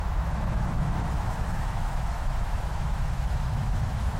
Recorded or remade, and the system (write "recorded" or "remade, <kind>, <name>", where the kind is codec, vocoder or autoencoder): remade, autoencoder, DAC-VAE